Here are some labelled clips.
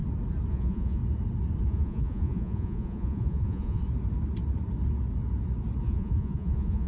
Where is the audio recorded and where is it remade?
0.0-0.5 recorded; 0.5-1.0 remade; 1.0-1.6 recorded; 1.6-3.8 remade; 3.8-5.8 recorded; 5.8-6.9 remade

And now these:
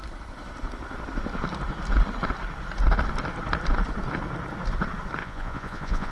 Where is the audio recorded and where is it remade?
0.0-5.2 recorded; 5.2-6.1 remade

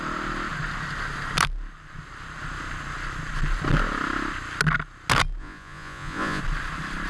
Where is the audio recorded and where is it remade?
0.0-5.4 recorded; 5.4-6.4 remade; 6.4-7.1 recorded

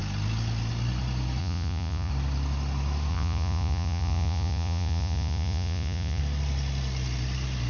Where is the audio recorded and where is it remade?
0.0-1.4 recorded; 1.4-2.1 remade; 2.1-3.1 recorded; 3.1-6.2 remade; 6.2-7.7 recorded

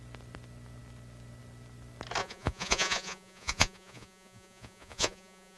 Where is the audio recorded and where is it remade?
0.0-2.2 recorded; 2.2-5.6 remade

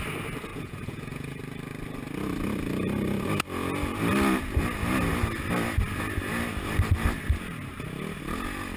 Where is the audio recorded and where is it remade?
0.0-0.5 recorded; 0.5-1.4 remade; 1.4-8.8 recorded

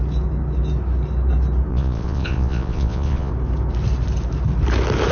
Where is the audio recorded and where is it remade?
0.0-1.7 recorded; 1.7-3.3 remade; 3.3-5.1 recorded

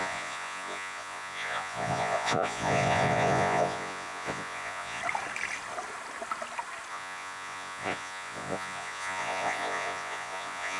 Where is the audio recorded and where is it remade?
0.0-5.0 remade; 5.0-6.9 recorded; 6.9-10.8 remade